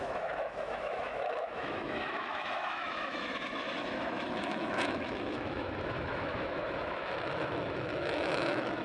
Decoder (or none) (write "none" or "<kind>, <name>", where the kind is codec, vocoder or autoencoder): autoencoder, DAC-VAE